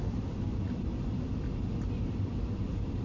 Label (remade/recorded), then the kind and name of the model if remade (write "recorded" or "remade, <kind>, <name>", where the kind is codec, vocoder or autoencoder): recorded